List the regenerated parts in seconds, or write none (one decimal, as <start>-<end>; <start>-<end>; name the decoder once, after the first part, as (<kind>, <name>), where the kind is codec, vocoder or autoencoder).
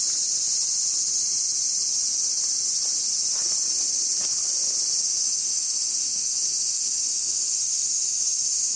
5.2-8.8 (autoencoder, DAC-VAE)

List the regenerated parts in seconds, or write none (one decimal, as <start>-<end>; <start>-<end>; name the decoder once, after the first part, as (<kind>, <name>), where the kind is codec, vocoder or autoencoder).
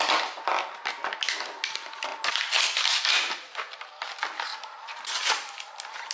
none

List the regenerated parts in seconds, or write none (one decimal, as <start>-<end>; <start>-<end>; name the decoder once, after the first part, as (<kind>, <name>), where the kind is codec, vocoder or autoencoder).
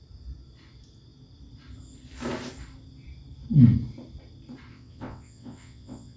4.7-6.2 (vocoder, WaveNeXt)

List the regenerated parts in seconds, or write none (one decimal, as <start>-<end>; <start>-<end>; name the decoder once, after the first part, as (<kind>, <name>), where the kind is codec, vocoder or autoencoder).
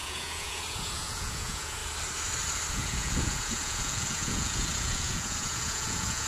0.0-1.8 (vocoder, Vocos); 2.7-6.3